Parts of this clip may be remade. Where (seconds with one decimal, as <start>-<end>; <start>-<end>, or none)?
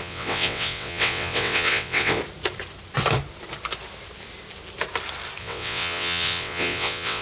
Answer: 0.0-2.2; 5.4-7.2